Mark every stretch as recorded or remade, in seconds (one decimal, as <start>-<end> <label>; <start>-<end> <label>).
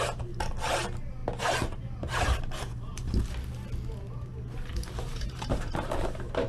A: 0.0-1.2 recorded; 1.2-3.2 remade; 3.2-4.3 recorded; 4.3-5.7 remade; 5.7-6.5 recorded